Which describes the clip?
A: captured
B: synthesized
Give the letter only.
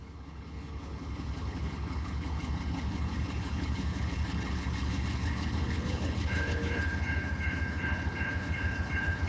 B